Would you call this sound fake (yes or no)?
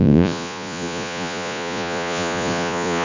yes